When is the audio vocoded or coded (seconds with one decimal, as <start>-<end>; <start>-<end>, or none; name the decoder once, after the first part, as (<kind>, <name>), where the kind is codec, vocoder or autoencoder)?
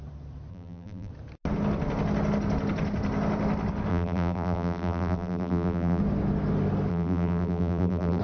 0.5-1.1 (vocoder, BigVGAN v2); 3.9-6.0; 6.9-8.2